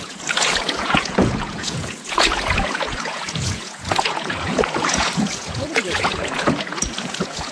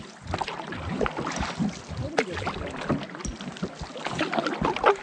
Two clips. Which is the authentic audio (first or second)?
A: second